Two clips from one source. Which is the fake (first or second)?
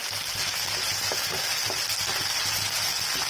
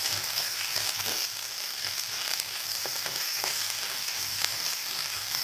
second